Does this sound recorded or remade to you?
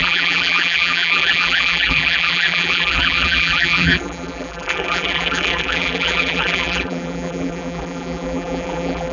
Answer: remade